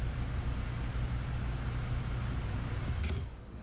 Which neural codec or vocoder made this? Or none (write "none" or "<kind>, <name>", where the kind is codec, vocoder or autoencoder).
none